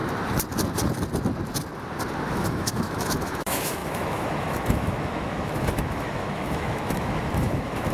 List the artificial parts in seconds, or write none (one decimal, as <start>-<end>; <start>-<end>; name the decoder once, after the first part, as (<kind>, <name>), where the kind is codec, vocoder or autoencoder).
2.3-7.9 (autoencoder, DAC-VAE)